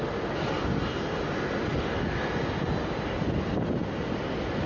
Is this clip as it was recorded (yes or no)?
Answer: yes